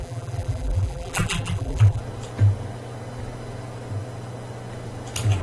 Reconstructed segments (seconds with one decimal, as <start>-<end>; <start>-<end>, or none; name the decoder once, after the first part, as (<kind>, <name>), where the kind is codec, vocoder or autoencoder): 0.0-2.0 (vocoder, BigVGAN v2)

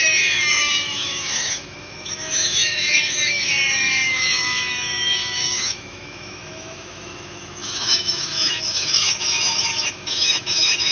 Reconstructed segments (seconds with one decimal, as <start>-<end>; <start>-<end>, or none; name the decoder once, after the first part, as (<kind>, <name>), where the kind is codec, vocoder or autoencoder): 0.0-10.9 (autoencoder, DAC-VAE)

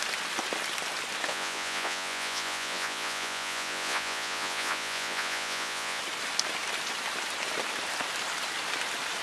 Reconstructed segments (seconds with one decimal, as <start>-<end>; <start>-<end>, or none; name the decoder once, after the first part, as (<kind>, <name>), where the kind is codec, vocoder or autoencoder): 1.3-6.0 (vocoder, Vocos)

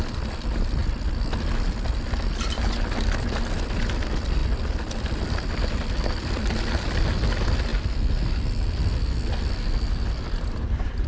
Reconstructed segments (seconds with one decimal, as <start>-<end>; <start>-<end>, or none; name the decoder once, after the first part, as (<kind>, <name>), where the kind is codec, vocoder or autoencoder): 0.0-0.8 (vocoder, BigVGAN v2); 2.0-4.4; 4.9-7.7; 9.5-11.1